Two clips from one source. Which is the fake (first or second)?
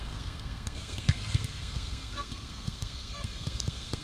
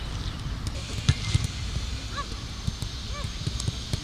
first